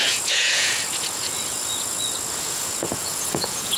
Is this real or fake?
fake